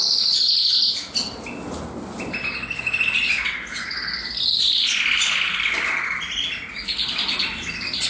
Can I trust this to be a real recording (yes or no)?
yes